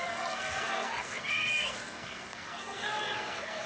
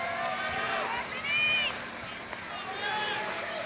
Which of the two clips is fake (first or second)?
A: first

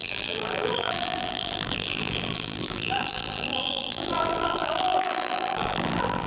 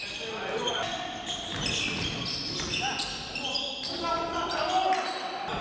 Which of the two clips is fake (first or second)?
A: first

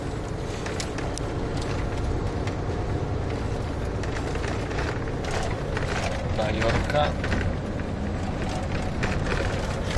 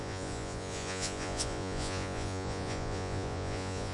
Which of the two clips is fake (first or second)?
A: second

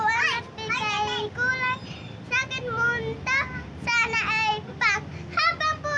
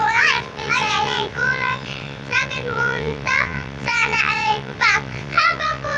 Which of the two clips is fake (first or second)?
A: second